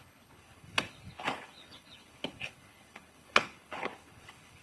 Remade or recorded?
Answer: remade